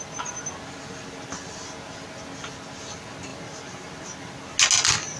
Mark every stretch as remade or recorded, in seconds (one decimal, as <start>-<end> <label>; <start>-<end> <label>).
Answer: 0.0-5.2 recorded